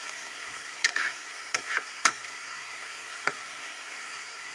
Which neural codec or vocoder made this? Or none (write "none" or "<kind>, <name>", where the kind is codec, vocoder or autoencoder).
codec, SNAC